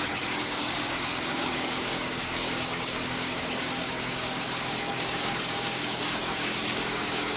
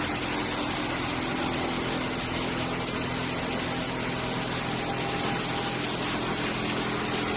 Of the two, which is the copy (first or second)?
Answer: first